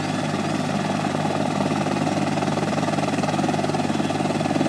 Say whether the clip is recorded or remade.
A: recorded